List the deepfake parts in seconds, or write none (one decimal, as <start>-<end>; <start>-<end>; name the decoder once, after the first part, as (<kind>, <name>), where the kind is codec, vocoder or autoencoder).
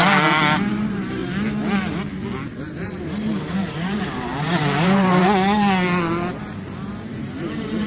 0.7-1.2 (vocoder, BigVGAN v2); 2.6-5.2; 6.9-7.9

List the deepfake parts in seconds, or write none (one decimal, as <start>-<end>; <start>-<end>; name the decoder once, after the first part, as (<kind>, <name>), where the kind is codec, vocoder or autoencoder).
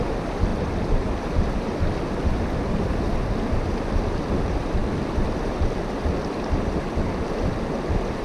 none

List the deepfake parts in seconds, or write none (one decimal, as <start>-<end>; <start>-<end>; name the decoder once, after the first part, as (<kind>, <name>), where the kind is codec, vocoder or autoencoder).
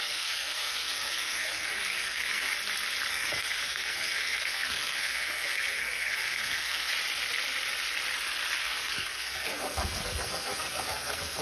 0.0-2.5 (codec, SNAC); 3.1-6.9; 8.6-11.4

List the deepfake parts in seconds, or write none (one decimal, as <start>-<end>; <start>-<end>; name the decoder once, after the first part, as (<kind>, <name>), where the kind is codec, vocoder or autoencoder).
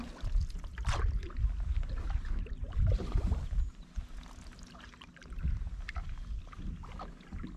none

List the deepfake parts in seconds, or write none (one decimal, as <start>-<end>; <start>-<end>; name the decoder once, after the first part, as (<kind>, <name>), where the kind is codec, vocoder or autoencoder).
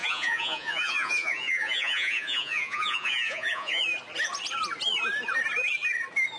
0.0-3.8 (vocoder, Vocos)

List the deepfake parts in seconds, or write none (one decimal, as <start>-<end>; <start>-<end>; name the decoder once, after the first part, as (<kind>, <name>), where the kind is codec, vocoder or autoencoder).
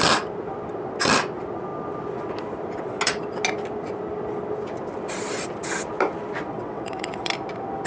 6.5-7.3 (vocoder, WaveNeXt)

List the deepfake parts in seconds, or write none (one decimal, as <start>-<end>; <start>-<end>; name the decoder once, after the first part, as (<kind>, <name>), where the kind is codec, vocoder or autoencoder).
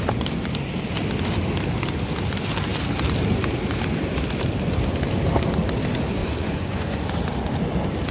6.2-7.1 (vocoder, Vocos)